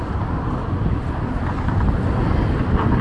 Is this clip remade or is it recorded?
recorded